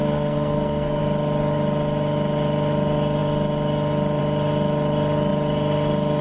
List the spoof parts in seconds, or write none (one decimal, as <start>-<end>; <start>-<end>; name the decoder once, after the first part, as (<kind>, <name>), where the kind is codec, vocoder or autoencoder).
0.0-1.0 (codec, SNAC)